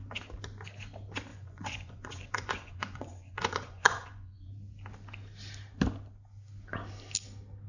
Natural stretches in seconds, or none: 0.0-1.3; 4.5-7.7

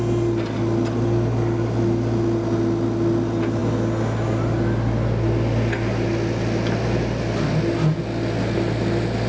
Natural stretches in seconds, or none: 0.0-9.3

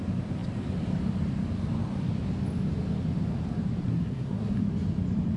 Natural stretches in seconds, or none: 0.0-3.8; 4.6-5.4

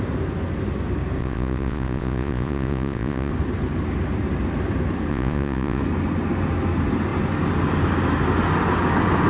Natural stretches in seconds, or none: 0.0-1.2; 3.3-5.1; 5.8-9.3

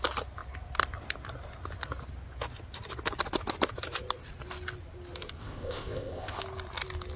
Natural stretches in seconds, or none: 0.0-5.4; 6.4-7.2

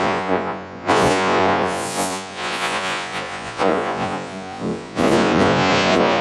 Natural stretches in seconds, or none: none

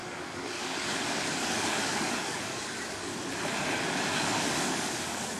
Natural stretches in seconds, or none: 3.2-4.1

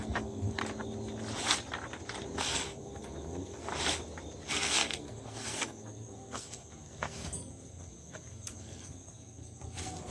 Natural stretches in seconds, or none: 0.6-2.4; 3.7-4.5